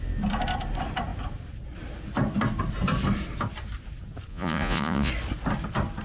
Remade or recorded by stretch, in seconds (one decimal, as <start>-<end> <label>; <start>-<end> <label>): 0.0-4.3 recorded; 4.3-5.1 remade; 5.1-6.0 recorded